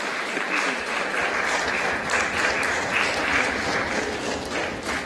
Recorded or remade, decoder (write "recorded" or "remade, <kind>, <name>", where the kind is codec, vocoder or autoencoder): remade, vocoder, BigVGAN v2